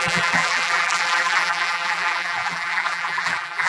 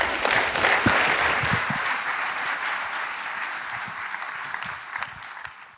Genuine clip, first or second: second